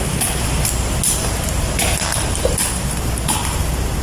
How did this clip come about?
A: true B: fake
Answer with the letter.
A